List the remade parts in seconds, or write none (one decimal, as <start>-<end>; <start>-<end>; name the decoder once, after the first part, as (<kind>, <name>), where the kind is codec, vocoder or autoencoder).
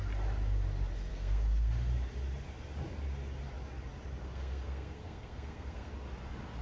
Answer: 1.1-1.7 (codec, SNAC); 4.2-5.9